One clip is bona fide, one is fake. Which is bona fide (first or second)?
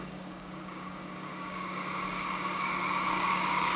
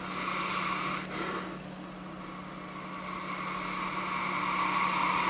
second